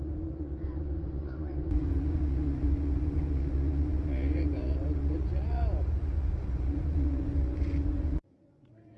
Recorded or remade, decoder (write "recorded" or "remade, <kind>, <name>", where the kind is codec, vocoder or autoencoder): remade, vocoder, Vocos